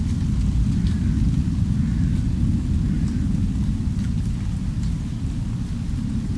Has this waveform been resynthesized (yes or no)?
no